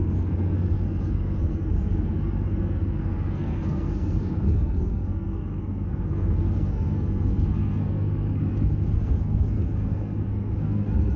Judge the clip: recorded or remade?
remade